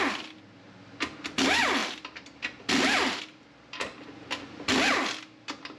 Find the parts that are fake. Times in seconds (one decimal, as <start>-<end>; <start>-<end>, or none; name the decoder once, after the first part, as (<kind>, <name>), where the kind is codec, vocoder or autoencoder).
1.8-3.5 (vocoder, BigVGAN v2)